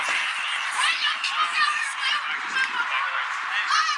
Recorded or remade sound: recorded